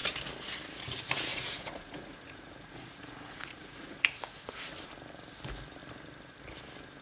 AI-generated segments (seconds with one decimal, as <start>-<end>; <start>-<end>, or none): 1.3-4.1